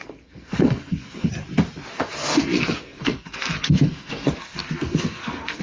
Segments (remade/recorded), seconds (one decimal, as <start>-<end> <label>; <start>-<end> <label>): 0.0-1.3 remade; 1.3-1.9 recorded; 1.9-5.6 remade